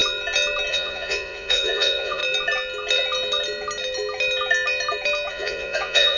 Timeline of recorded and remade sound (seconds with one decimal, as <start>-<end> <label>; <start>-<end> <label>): 0.0-0.7 recorded; 0.7-2.2 remade; 2.2-5.3 recorded; 5.3-6.2 remade